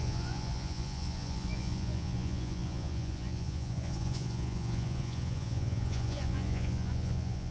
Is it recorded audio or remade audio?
remade